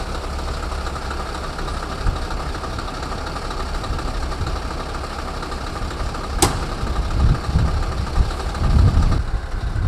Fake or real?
real